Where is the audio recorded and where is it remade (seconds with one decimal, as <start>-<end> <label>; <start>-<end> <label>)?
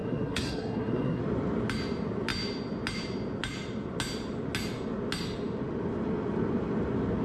0.0-1.2 remade; 1.2-7.2 recorded